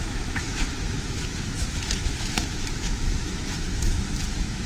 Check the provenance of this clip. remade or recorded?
remade